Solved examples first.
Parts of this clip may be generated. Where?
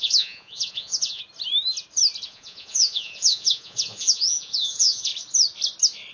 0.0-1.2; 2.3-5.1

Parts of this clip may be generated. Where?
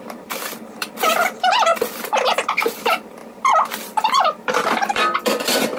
0.0-1.7; 2.2-5.8